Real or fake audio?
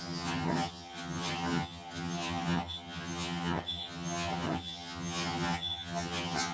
fake